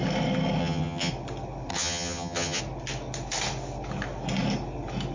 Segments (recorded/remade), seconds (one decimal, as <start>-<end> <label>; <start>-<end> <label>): 0.0-0.6 recorded; 0.6-1.1 remade; 1.1-1.7 recorded; 1.7-2.6 remade; 2.6-5.1 recorded